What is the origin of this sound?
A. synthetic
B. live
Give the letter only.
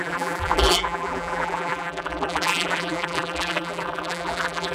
A